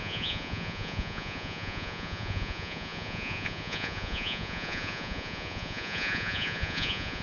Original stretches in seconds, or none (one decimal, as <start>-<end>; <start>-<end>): none